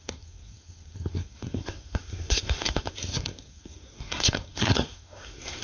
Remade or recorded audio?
remade